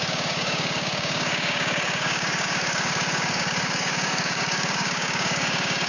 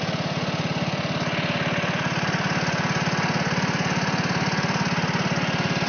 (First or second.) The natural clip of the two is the second